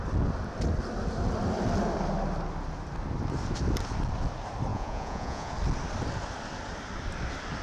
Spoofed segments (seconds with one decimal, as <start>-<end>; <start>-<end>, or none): 4.7-5.5